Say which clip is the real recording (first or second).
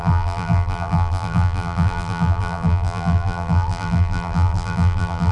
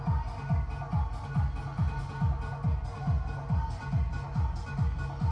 second